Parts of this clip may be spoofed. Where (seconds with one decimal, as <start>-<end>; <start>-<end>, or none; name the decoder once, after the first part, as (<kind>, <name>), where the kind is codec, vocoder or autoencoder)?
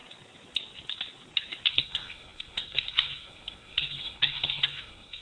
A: 1.7-5.2 (codec, SNAC)